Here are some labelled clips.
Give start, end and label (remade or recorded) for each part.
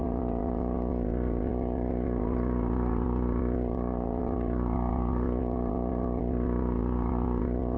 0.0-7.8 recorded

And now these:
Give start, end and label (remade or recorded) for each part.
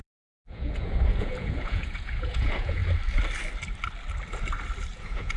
0.0-2.8 remade; 2.8-5.0 recorded; 5.0-5.4 remade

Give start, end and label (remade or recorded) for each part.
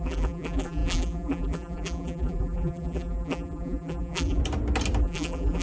0.0-4.4 remade; 4.4-5.0 recorded; 5.0-5.6 remade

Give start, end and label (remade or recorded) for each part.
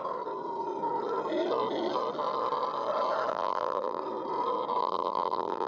0.0-3.3 recorded; 3.3-4.0 remade; 4.0-4.8 recorded; 4.8-5.7 remade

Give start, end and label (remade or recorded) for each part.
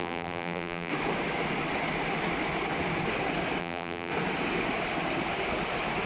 0.0-0.9 remade; 0.9-3.6 recorded; 3.6-4.1 remade; 4.1-6.1 recorded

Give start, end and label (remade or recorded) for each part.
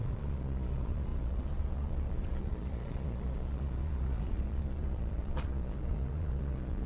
0.0-6.9 remade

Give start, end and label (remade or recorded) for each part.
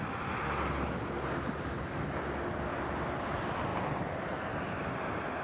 0.0-5.4 recorded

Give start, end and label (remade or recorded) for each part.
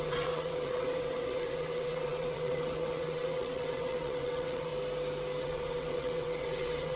0.0-4.7 remade; 4.7-5.4 recorded; 5.4-7.0 remade